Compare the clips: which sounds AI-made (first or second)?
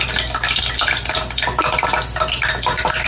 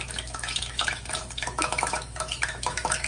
second